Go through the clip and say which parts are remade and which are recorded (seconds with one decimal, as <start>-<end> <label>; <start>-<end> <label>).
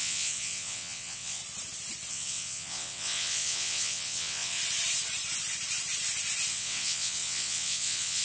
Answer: 0.0-1.4 remade; 1.4-2.1 recorded; 2.1-4.6 remade; 4.6-6.5 recorded; 6.5-8.2 remade